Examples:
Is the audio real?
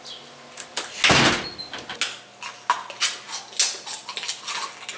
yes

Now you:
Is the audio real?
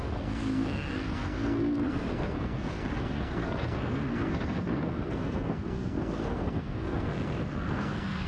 no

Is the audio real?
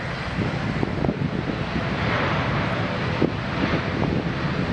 yes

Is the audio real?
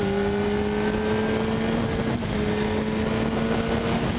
yes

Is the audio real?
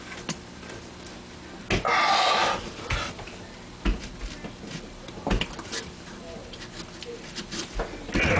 yes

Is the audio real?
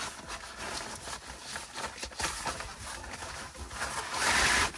yes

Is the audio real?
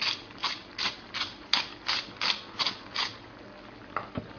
yes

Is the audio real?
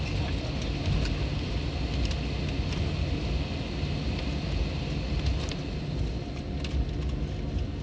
yes